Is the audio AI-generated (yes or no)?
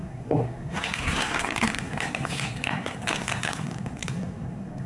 yes